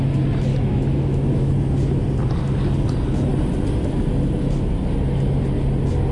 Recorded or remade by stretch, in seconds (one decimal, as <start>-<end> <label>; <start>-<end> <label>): 0.0-0.5 recorded; 0.5-1.5 remade; 1.5-6.1 recorded